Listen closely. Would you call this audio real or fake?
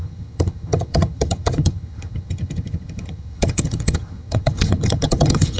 fake